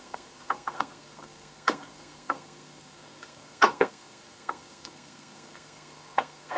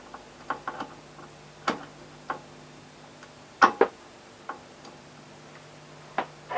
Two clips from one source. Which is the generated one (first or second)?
first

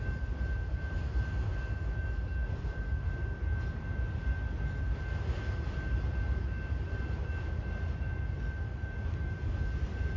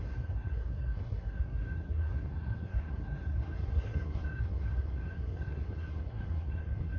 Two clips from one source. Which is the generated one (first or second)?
second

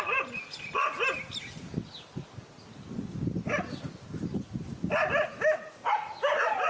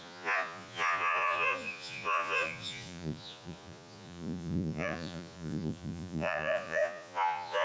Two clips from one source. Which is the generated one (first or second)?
second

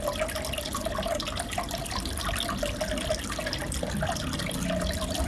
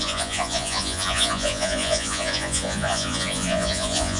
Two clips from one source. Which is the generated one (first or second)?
second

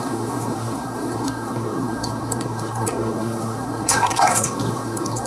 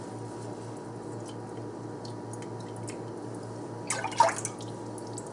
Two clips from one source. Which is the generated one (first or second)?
first